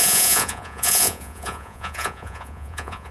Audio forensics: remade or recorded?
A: remade